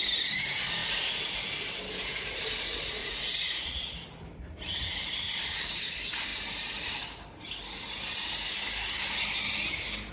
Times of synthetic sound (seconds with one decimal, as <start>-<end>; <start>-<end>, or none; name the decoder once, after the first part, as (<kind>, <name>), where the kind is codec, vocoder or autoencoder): 3.0-3.9 (vocoder, Vocos)